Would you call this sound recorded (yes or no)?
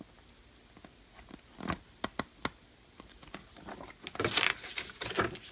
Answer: yes